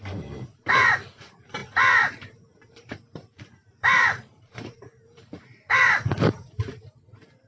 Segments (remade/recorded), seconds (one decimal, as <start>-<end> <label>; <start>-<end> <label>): 0.0-7.5 remade